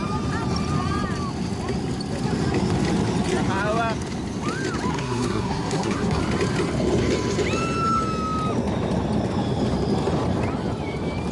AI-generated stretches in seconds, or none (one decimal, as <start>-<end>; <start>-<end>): 4.9-6.2